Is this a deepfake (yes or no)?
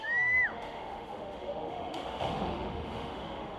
yes